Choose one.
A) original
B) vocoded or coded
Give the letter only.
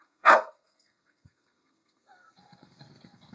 B